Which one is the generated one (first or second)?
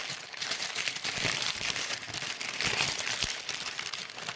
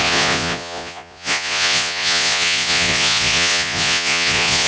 second